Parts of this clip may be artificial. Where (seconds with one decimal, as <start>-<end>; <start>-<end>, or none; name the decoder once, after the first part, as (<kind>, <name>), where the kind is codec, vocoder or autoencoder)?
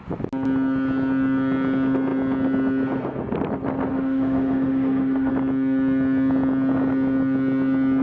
3.9-5.3 (autoencoder, DAC-VAE)